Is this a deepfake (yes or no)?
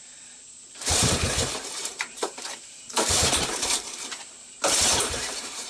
yes